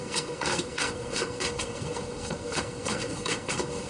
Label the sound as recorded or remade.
remade